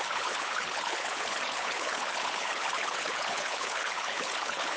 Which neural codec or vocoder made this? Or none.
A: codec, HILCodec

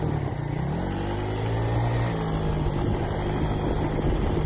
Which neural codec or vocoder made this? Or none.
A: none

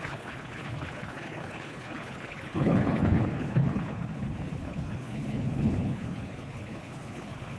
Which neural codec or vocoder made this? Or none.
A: codec, HILCodec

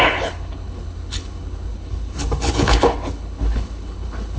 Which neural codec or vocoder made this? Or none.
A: codec, HILCodec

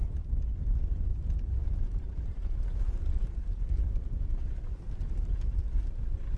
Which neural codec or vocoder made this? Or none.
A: none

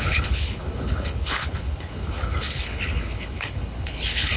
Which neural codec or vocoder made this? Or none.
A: codec, HILCodec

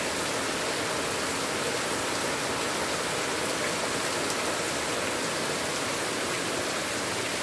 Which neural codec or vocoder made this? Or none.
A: none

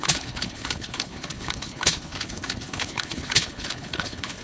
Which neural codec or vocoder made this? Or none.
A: codec, HILCodec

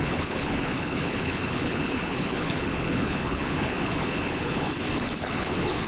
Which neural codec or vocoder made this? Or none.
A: codec, HILCodec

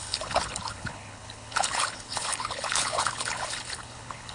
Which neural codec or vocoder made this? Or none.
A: codec, HILCodec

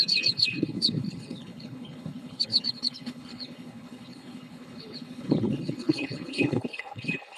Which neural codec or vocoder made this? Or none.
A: codec, HILCodec